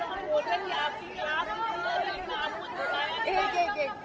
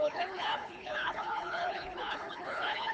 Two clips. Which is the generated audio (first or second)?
second